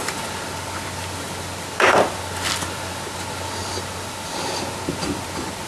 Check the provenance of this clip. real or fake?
real